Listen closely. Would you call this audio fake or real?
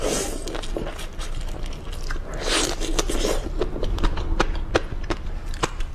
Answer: real